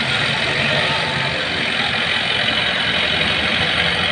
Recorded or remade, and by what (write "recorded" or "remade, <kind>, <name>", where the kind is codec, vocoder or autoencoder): recorded